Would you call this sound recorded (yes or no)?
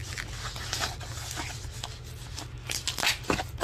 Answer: yes